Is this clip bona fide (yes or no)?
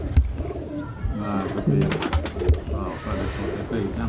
yes